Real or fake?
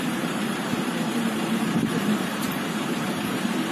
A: fake